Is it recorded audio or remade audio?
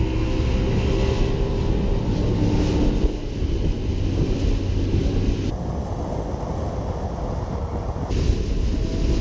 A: recorded